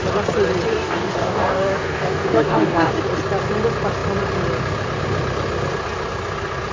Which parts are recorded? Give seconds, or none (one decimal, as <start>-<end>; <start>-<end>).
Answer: 0.0-0.7; 2.9-6.7